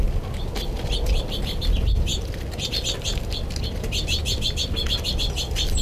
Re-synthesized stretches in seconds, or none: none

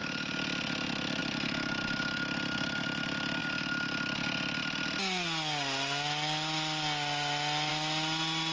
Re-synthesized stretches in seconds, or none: none

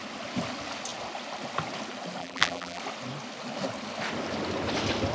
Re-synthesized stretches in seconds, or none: 2.2-2.8 (vocoder, BigVGAN v2)

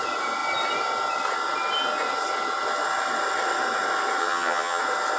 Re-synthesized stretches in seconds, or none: 4.2-4.8 (vocoder, HiFi-GAN)

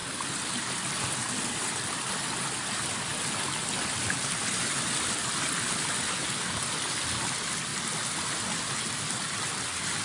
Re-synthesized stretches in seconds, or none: 0.7-3.1 (vocoder, BigVGAN v2); 3.7-7.7; 8.5-10.0

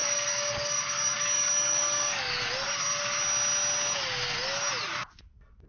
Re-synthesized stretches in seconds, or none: 0.0-2.4 (codec, DAC)